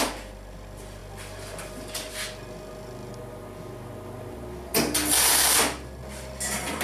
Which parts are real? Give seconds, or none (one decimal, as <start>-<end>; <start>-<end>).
0.0-6.8